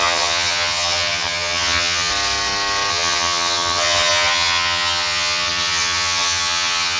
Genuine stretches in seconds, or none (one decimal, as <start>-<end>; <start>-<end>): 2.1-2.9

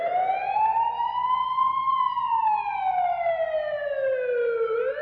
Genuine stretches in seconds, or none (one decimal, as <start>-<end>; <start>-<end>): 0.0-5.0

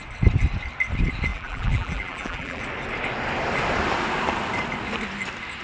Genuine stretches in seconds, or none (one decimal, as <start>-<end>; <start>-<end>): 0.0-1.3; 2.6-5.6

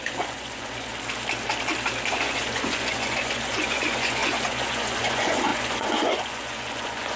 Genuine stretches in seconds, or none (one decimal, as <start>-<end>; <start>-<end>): 0.9-2.1

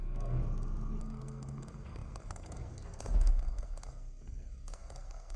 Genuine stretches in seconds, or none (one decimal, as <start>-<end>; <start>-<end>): 0.4-1.0

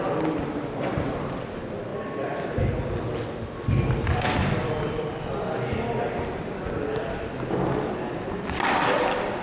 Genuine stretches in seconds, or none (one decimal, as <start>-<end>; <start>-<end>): 0.0-9.4

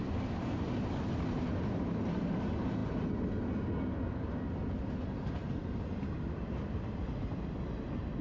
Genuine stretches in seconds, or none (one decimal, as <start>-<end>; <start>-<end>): 0.0-8.2